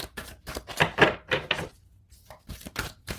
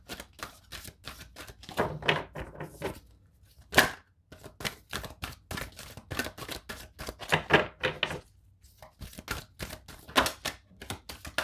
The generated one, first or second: first